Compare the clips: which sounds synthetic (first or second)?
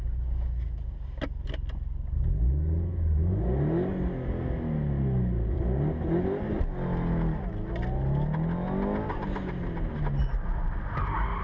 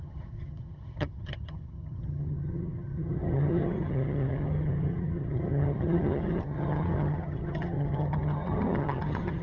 second